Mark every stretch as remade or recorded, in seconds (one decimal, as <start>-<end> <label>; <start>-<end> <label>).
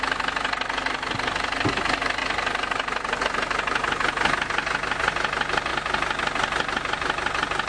0.0-7.7 recorded